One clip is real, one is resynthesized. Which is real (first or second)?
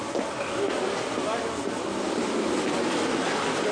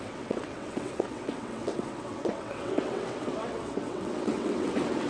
first